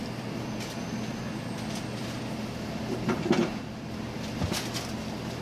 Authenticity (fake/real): real